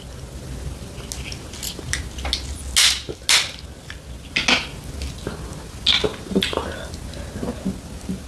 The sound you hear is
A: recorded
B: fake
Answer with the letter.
A